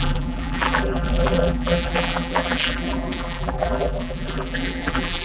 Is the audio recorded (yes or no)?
no